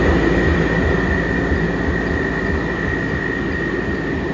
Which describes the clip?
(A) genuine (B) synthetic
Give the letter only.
A